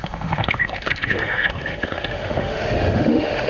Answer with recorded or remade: remade